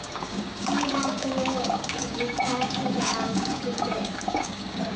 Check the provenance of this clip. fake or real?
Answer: fake